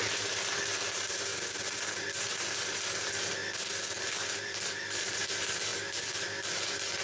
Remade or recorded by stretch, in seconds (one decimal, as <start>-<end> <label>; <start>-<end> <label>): 0.0-1.3 remade; 1.3-2.2 recorded; 2.2-3.4 remade; 3.4-4.0 recorded; 4.0-5.7 remade; 5.7-6.4 recorded; 6.4-7.0 remade